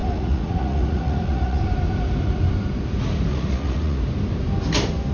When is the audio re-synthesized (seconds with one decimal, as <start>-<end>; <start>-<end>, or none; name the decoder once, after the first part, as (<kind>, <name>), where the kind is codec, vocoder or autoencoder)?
0.0-1.6 (vocoder, Vocos); 3.3-4.0